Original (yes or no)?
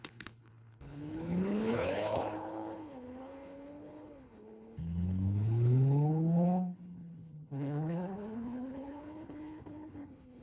no